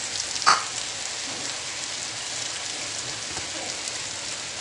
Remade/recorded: recorded